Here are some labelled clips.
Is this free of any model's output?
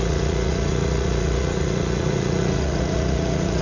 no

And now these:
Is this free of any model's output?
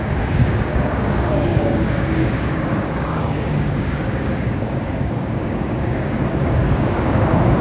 no